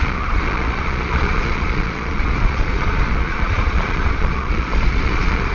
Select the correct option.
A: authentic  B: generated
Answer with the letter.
B